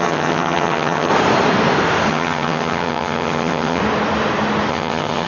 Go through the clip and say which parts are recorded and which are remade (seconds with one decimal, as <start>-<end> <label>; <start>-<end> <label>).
0.0-1.1 remade; 1.1-2.1 recorded; 2.1-3.8 remade; 3.8-4.7 recorded; 4.7-5.3 remade